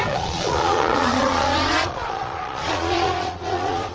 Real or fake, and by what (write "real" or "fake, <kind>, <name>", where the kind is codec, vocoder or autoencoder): fake, vocoder, Vocos